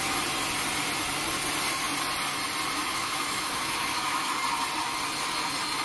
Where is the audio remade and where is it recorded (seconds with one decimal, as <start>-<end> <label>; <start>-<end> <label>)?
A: 0.0-2.9 recorded; 2.9-4.3 remade; 4.3-5.8 recorded